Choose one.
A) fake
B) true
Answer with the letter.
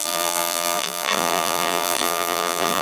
A